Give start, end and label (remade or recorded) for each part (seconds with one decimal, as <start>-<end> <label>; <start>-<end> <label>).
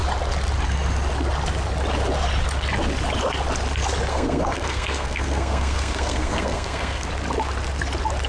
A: 0.0-4.1 recorded; 4.1-7.1 remade; 7.1-8.3 recorded